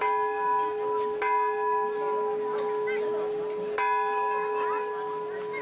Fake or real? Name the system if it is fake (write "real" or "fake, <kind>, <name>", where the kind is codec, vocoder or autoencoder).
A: real